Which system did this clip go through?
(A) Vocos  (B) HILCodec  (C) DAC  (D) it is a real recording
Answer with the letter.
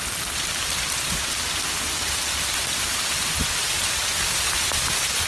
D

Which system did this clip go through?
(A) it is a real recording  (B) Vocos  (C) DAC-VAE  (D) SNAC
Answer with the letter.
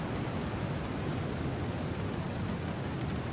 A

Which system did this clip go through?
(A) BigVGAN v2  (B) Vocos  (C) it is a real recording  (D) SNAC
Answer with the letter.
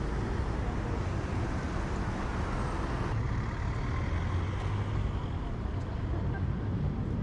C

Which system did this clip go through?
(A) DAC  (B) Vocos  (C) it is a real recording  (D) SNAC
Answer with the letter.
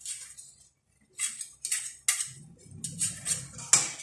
C